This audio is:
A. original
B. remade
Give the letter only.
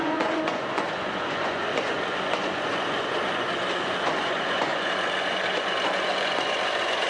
B